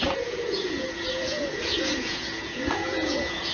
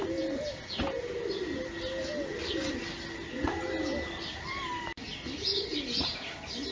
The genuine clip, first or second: second